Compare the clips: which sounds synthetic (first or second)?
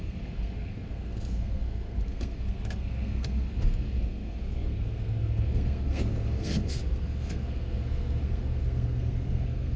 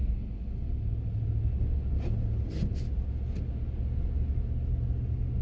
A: first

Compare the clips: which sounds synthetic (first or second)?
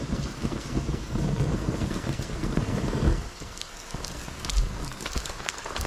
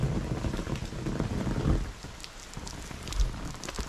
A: first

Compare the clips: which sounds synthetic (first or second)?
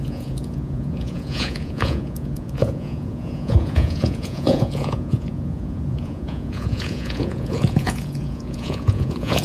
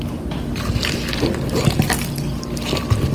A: first